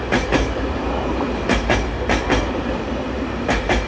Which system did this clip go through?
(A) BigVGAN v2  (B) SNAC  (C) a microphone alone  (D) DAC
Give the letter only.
A